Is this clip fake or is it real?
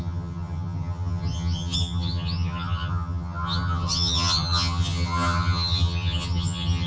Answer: fake